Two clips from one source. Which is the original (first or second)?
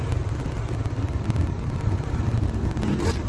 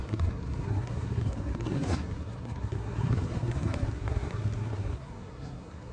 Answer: first